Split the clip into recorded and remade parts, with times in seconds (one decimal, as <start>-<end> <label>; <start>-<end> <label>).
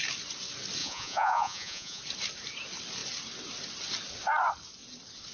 0.0-0.8 recorded; 0.8-2.0 remade; 2.0-5.3 recorded